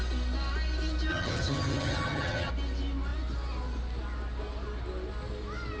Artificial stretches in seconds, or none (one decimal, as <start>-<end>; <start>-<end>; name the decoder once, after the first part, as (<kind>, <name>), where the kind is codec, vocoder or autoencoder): 1.1-2.5 (vocoder, HiFi-GAN)